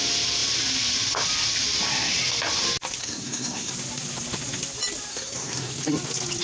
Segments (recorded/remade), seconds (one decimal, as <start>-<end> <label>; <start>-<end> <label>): 0.0-3.0 recorded; 3.0-3.7 remade; 3.7-5.1 recorded; 5.1-5.7 remade; 5.7-6.4 recorded